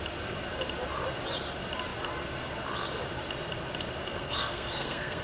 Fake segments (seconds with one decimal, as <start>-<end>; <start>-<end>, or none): 4.0-5.2